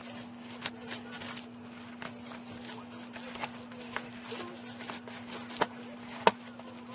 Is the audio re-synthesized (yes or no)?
no